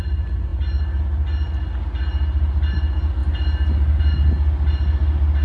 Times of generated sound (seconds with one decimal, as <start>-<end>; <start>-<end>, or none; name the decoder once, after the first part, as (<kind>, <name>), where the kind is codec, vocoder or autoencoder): none